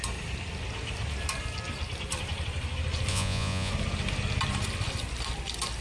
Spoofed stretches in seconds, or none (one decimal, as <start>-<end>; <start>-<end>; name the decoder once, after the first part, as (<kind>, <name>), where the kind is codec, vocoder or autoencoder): 3.1-3.7 (vocoder, Vocos)